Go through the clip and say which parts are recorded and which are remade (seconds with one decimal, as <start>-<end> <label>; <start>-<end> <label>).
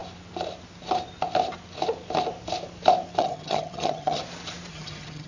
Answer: 0.0-3.2 recorded; 3.2-4.2 remade; 4.2-4.7 recorded; 4.7-5.3 remade